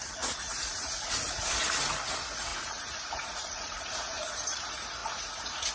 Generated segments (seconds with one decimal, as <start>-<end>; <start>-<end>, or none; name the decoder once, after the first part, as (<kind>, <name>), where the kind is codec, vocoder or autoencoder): 0.0-5.7 (vocoder, Vocos)